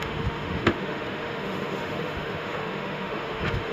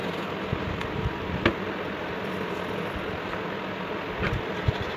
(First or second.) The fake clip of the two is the first